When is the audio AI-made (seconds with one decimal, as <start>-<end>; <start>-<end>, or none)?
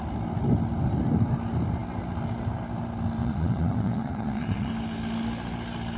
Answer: 3.2-4.7